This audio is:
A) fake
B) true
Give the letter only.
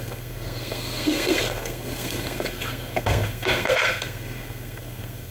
A